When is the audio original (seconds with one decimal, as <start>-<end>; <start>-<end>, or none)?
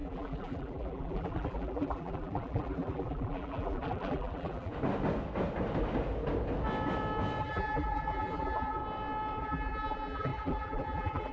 4.7-7.4; 8.8-9.4